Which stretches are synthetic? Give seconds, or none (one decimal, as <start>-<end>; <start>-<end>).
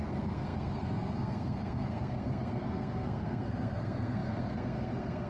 0.0-5.3